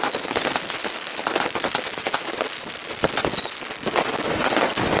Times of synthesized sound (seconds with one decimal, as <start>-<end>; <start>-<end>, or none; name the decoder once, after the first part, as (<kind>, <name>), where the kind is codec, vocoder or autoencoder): none

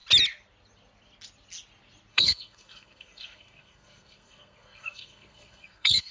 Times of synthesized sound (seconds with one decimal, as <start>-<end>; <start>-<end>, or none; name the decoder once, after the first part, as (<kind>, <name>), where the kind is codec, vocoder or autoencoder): 2.1-6.1 (codec, SNAC)

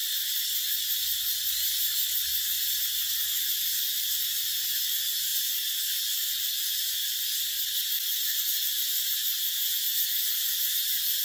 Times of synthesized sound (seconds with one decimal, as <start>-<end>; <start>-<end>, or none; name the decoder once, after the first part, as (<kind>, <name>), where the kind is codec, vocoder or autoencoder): 3.4-5.3 (vocoder, BigVGAN v2); 6.3-7.2; 8.3-11.2

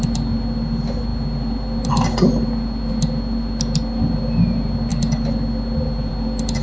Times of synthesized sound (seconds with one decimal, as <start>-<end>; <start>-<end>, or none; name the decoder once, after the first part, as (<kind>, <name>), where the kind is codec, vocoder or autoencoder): none